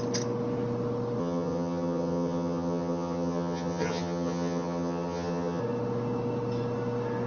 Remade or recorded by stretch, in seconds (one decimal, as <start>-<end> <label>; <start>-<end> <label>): 0.0-1.2 recorded; 1.2-5.6 remade; 5.6-7.3 recorded